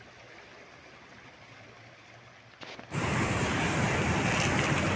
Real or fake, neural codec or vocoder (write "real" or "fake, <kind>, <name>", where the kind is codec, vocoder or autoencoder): real